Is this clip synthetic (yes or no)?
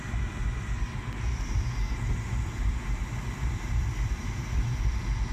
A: no